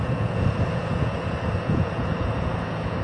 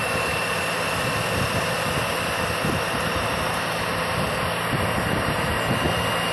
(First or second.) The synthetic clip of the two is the first